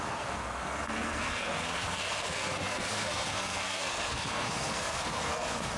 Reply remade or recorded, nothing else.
remade